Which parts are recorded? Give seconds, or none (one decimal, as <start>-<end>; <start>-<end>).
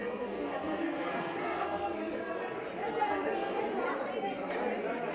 2.4-2.8; 3.6-5.1